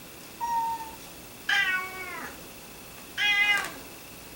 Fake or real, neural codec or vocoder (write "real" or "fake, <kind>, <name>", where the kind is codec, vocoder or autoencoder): real